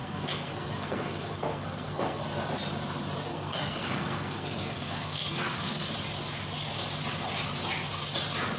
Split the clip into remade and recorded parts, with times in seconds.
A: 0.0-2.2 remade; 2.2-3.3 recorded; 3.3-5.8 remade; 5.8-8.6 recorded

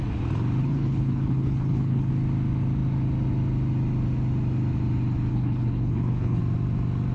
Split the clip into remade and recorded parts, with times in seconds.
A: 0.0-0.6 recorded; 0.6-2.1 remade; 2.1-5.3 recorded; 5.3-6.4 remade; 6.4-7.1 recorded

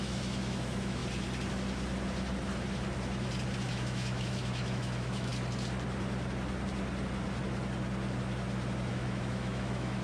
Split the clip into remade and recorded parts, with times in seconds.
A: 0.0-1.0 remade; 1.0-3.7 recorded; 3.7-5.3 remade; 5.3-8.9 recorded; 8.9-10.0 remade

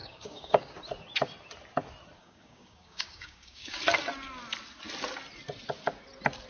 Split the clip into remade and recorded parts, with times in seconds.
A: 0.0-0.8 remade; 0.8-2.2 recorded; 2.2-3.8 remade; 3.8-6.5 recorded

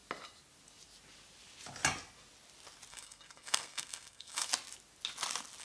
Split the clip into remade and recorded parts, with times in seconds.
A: 0.0-2.9 recorded; 2.9-4.5 remade; 4.5-5.6 recorded